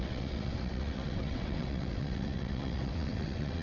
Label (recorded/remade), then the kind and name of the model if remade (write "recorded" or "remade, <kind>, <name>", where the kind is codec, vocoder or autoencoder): remade, vocoder, WaveNeXt